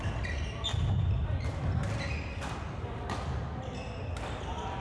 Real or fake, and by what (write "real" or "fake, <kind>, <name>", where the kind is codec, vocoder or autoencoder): real